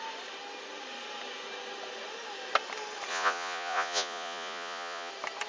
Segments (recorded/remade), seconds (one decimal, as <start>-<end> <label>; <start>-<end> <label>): 0.0-3.1 recorded; 3.1-5.1 remade; 5.1-5.5 recorded